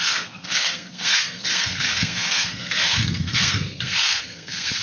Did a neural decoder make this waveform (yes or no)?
yes